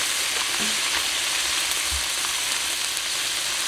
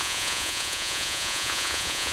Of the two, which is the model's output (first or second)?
second